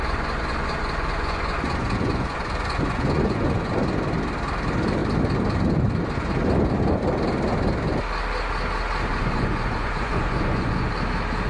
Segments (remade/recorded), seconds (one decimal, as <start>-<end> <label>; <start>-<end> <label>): 0.0-3.7 remade; 3.7-9.1 recorded; 9.1-10.9 remade; 10.9-11.5 recorded